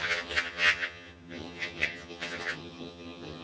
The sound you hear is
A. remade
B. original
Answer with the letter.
A